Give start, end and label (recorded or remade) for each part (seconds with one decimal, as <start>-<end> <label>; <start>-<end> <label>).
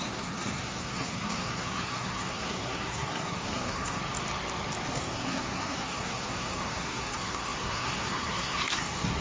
0.0-4.0 remade; 4.0-4.9 recorded; 4.9-9.2 remade